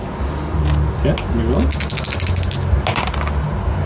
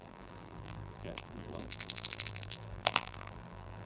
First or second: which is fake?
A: second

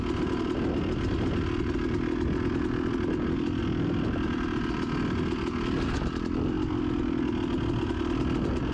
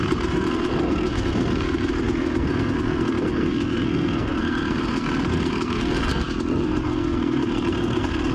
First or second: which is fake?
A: second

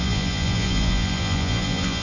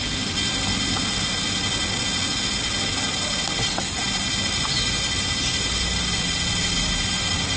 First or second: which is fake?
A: first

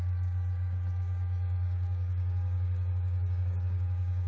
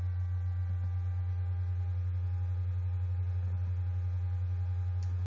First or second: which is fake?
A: first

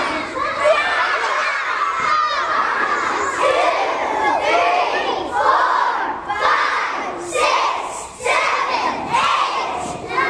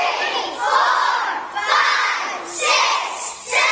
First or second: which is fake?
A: first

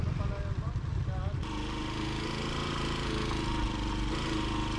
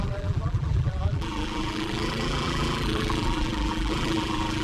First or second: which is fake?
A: second